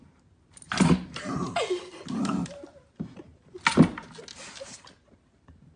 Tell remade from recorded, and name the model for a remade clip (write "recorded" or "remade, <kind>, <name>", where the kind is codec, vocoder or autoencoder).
recorded